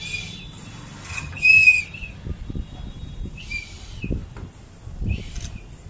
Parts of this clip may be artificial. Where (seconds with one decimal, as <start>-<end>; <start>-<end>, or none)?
1.1-1.8